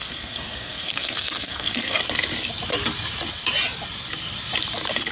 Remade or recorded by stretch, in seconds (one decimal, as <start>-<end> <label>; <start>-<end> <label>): 0.0-2.0 remade; 2.0-5.1 recorded